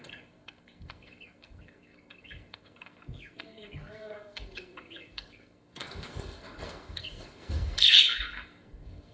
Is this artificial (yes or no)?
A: yes